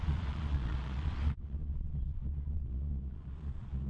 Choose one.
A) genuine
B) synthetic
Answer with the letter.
B